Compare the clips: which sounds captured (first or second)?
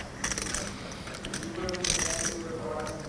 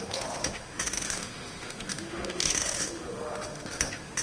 first